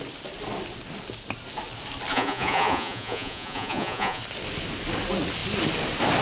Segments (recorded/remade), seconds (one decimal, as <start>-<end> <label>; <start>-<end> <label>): 0.0-2.1 recorded; 2.1-4.2 remade; 4.2-6.2 recorded